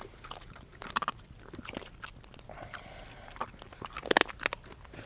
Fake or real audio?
real